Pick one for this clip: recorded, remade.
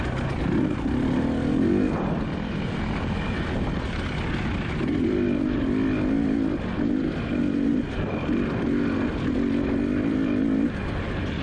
recorded